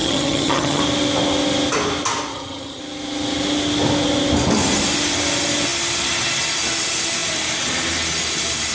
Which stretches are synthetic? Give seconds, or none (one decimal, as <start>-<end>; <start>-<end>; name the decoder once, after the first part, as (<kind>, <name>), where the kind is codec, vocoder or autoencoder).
0.0-0.8 (vocoder, HiFi-GAN); 2.3-2.8